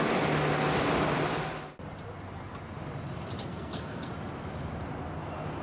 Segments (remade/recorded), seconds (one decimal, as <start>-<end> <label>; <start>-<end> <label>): 0.0-3.5 recorded; 3.5-4.1 remade; 4.1-5.6 recorded